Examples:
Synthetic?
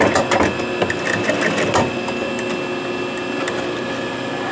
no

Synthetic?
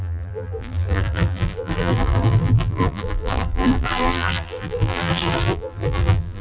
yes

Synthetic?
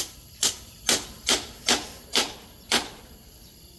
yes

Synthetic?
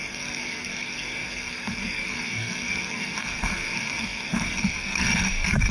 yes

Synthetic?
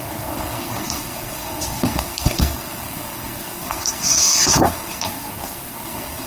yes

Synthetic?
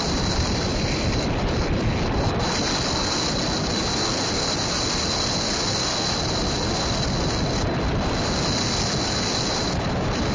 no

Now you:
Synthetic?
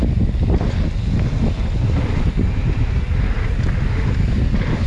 no